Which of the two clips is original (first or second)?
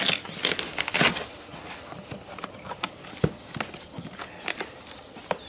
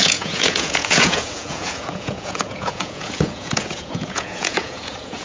first